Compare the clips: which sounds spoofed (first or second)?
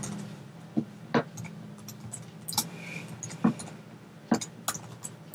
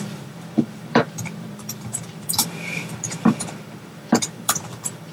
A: second